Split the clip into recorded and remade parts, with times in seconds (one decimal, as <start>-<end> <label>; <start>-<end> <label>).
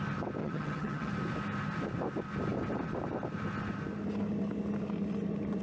0.0-0.4 recorded; 0.4-1.1 remade; 1.1-5.6 recorded